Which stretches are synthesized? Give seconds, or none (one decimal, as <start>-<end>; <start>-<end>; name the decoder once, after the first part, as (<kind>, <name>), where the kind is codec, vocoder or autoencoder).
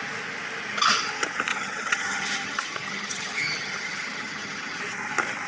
1.5-4.8 (vocoder, HiFi-GAN)